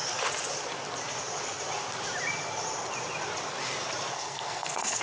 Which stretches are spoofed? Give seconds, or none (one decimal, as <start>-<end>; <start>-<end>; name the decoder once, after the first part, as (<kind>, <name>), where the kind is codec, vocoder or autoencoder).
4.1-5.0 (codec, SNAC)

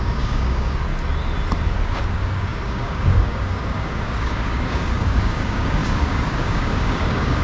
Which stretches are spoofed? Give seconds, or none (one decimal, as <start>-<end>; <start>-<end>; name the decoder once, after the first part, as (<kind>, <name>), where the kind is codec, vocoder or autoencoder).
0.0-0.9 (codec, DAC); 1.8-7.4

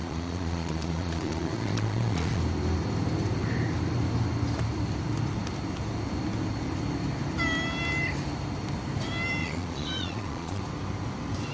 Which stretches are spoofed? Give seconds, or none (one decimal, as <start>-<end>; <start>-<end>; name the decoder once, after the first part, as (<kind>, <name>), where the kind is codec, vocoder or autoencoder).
0.0-2.4 (vocoder, Vocos); 9.4-10.6